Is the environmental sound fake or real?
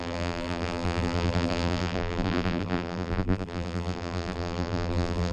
fake